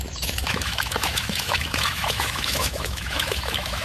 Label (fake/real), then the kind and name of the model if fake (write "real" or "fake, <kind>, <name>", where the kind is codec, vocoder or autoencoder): fake, autoencoder, DAC-VAE